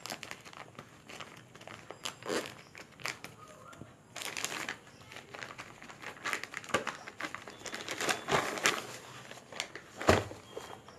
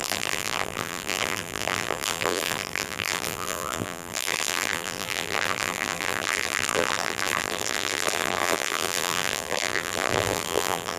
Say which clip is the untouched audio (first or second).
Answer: first